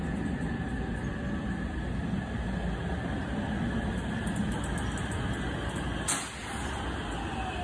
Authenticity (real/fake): real